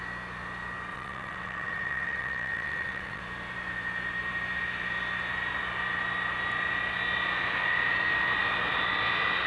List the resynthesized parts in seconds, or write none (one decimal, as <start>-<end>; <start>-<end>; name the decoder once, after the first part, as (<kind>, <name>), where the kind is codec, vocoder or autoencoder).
0.9-3.2 (vocoder, WaveNeXt)